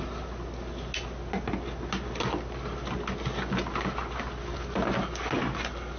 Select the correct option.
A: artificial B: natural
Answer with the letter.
B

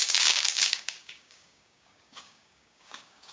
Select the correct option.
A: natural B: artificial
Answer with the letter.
B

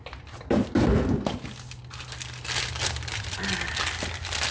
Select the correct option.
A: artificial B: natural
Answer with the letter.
B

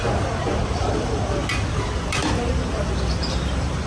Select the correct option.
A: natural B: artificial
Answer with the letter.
A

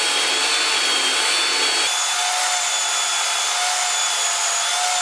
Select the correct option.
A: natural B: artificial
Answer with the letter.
A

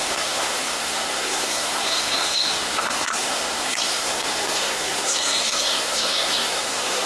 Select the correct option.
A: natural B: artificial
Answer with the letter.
B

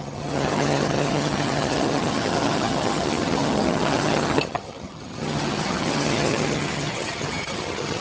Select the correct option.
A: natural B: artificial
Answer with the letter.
B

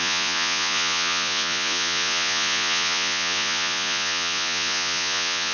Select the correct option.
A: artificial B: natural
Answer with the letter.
A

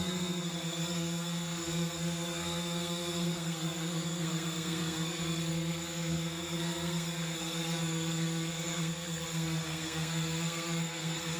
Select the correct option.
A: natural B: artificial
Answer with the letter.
B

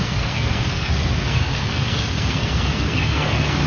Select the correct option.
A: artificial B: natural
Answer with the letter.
A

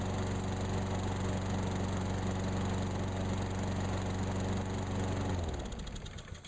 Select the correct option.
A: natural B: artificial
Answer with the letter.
A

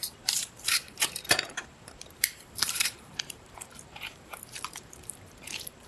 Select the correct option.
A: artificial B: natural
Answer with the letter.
A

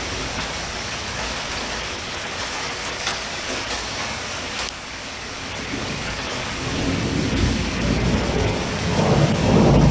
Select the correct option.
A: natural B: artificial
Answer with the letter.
B